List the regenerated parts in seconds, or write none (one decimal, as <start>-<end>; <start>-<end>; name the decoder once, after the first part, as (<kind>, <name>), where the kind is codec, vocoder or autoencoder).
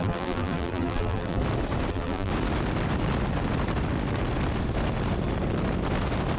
0.0-1.4 (vocoder, BigVGAN v2); 1.9-2.3